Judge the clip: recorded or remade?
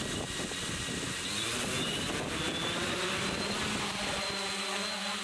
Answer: recorded